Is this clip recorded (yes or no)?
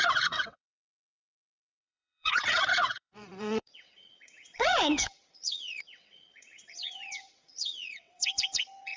no